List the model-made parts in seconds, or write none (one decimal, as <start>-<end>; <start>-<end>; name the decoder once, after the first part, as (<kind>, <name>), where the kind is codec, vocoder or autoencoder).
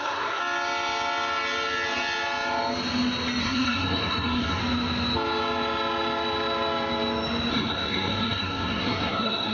0.0-0.4 (codec, SNAC); 3.4-4.6; 7.5-9.5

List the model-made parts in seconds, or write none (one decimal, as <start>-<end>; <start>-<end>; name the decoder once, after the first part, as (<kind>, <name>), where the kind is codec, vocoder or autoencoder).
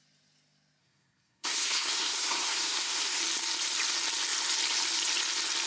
0.8-3.2 (codec, SNAC)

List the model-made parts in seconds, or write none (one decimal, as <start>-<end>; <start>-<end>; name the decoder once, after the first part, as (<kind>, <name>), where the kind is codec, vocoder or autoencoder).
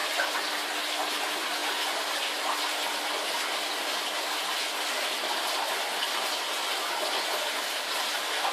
none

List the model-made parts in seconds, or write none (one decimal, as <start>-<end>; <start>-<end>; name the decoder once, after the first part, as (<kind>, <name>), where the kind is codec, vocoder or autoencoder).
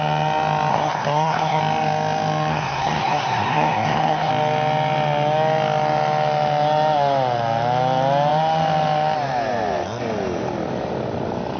0.7-1.6 (codec, SNAC); 2.5-4.3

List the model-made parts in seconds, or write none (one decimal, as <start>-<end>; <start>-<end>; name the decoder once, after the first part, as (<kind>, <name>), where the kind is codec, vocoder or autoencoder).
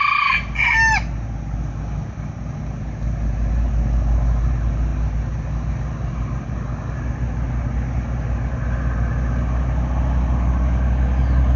none